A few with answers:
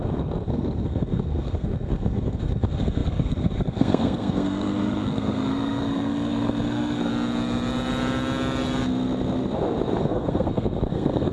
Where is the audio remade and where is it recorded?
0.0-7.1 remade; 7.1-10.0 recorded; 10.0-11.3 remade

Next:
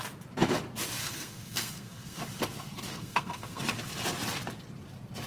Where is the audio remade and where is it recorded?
0.0-1.0 recorded; 1.0-2.2 remade; 2.2-2.9 recorded; 2.9-3.6 remade; 3.6-5.3 recorded

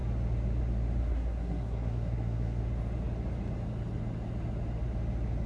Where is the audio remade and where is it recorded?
0.0-1.0 recorded; 1.0-2.6 remade; 2.6-5.5 recorded

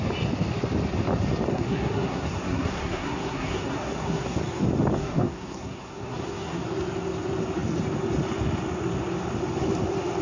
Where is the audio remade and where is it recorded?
0.0-1.5 recorded; 1.5-4.4 remade; 4.4-5.0 recorded; 5.0-6.6 remade; 6.6-10.2 recorded

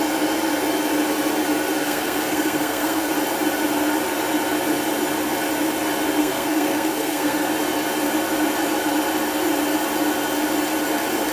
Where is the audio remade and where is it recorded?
0.0-1.8 recorded; 1.8-3.1 remade; 3.1-6.2 recorded; 6.2-7.5 remade; 7.5-11.3 recorded

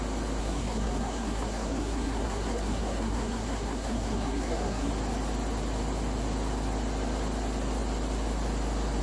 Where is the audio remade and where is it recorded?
0.0-0.4 recorded; 0.4-4.9 remade; 4.9-9.0 recorded

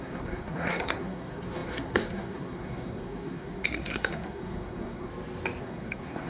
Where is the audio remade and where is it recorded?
0.0-5.1 remade; 5.1-5.6 recorded; 5.6-6.3 remade

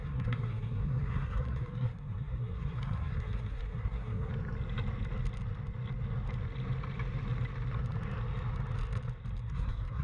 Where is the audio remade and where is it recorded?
0.0-4.3 remade; 4.3-9.4 recorded; 9.4-10.0 remade